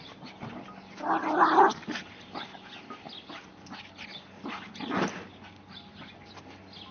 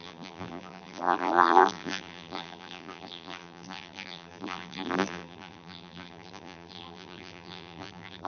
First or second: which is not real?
second